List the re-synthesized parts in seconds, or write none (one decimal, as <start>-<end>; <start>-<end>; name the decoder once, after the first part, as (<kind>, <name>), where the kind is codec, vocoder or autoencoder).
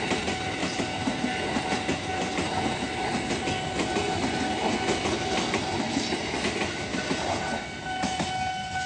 none